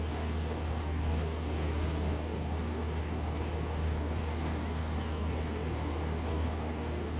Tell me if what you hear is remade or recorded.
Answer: remade